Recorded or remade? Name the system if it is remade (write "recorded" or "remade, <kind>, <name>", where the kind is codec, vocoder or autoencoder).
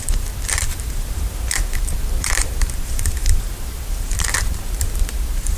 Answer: remade, vocoder, BigVGAN v2